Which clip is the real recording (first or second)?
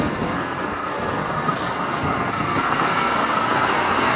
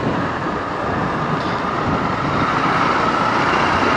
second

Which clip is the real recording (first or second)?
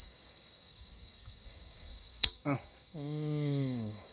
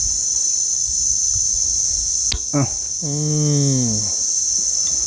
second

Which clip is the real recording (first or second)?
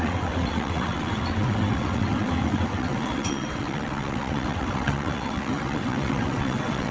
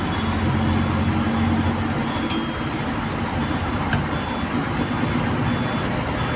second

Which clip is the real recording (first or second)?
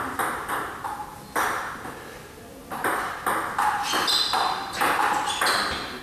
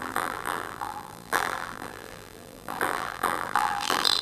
first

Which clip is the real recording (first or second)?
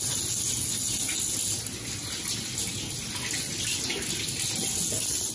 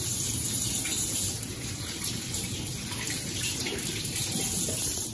first